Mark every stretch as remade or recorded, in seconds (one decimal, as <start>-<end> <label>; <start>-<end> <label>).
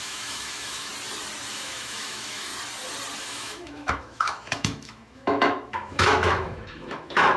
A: 0.0-0.9 remade; 0.9-1.5 recorded; 1.5-2.5 remade; 2.5-3.2 recorded; 3.2-7.4 remade